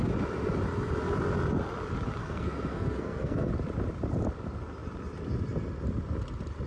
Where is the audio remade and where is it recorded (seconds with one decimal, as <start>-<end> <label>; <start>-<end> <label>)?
0.0-2.2 recorded; 2.2-3.5 remade; 3.5-6.7 recorded